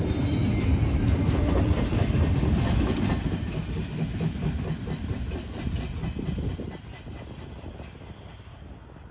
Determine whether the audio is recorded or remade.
recorded